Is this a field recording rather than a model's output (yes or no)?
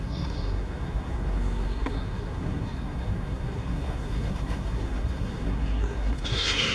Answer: no